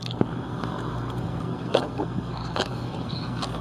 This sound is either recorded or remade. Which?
remade